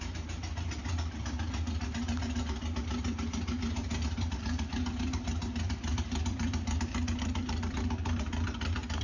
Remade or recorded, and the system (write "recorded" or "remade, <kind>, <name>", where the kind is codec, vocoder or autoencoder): remade, vocoder, BigVGAN v2